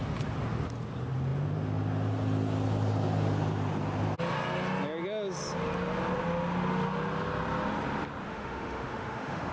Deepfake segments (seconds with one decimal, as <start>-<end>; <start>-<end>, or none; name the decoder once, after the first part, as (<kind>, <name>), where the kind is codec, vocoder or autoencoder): 8.2-9.5 (autoencoder, DAC-VAE)